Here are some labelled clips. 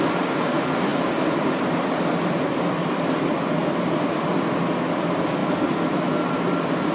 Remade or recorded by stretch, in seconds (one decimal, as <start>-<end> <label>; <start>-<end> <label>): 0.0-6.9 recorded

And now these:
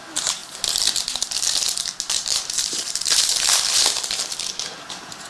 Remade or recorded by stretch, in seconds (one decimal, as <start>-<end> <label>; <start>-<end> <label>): 0.0-2.2 recorded; 2.2-3.8 remade; 3.8-5.3 recorded

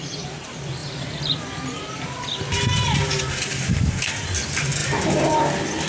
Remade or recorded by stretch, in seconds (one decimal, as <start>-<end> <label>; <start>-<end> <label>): 0.0-0.8 recorded; 0.8-1.4 remade; 1.4-4.8 recorded; 4.8-5.4 remade; 5.4-5.9 recorded

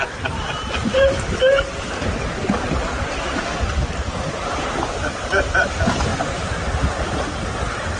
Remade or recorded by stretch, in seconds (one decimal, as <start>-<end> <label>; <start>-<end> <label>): 0.0-8.0 remade

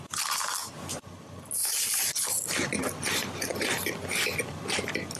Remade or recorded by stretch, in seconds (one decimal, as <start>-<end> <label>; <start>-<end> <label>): 0.0-5.2 recorded

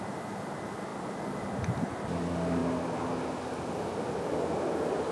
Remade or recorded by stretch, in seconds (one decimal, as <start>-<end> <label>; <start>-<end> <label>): 0.0-5.1 recorded

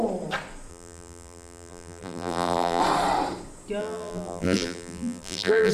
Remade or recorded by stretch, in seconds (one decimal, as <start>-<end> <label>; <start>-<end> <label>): 0.0-0.7 recorded; 0.7-2.8 remade; 2.8-3.8 recorded; 3.8-5.7 remade

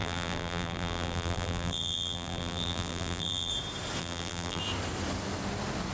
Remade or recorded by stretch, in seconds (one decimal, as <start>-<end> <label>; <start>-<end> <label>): 0.0-3.5 remade; 3.5-4.0 recorded; 4.0-4.6 remade; 4.6-5.9 recorded